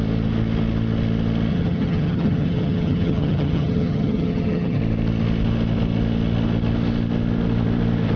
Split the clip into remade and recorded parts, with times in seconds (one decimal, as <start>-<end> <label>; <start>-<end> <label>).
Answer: 0.0-1.5 recorded; 1.5-4.8 remade; 4.8-8.2 recorded